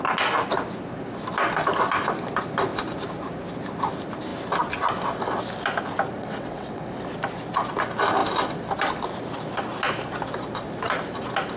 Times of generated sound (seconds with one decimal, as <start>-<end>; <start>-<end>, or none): 6.2-6.9